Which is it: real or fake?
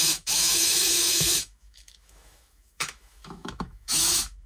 fake